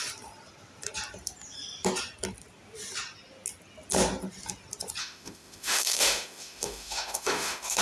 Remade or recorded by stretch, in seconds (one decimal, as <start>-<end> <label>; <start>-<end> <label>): 0.0-5.0 recorded; 5.0-7.8 remade